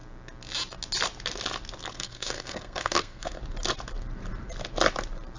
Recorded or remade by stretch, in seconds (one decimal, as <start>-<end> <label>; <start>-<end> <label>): 0.0-1.9 recorded; 1.9-3.4 remade; 3.4-5.4 recorded

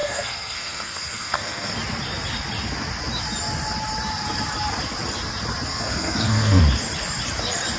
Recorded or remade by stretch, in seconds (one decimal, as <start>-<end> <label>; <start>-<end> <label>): 0.0-1.7 remade; 1.7-5.7 recorded; 5.7-6.6 remade; 6.6-7.8 recorded